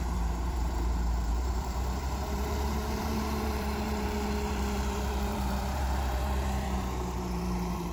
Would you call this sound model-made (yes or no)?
yes